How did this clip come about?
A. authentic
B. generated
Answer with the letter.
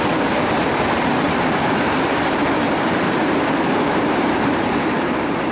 B